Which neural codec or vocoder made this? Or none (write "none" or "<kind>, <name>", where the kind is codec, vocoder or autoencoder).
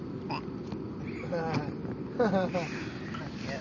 none